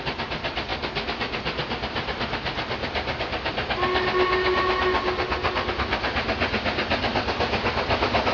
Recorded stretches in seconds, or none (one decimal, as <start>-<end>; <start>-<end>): 0.0-8.3